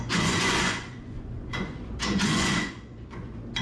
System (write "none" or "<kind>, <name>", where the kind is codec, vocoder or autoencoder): vocoder, Vocos